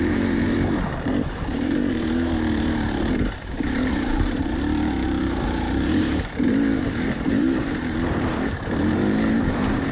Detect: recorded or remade remade